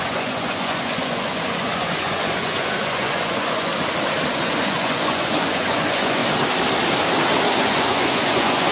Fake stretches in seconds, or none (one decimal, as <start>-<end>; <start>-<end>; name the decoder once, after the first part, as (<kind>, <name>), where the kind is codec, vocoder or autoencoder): 0.0-3.7 (vocoder, Vocos); 4.3-6.2; 7.5-8.7